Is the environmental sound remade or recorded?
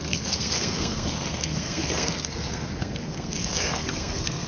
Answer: remade